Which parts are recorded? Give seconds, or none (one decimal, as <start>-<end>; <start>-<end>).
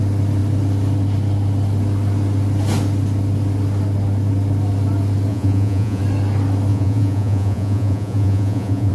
0.0-5.3; 6.0-6.7